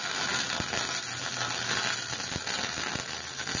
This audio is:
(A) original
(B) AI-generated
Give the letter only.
A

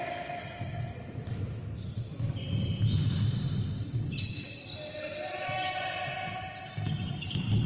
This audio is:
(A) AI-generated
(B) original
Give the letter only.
B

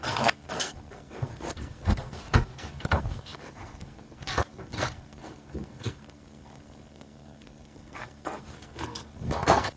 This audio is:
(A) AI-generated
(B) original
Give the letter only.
A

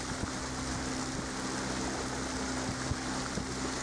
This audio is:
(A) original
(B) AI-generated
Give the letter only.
A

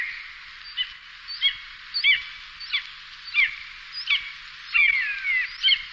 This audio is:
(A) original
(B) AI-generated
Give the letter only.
A